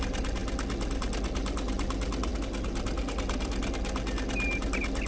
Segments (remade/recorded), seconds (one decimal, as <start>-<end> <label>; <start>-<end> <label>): 0.0-5.1 recorded